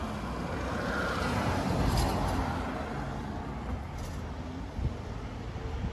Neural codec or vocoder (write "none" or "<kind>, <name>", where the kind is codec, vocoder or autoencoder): none